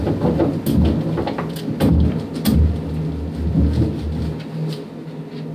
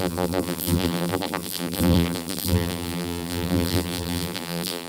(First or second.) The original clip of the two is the first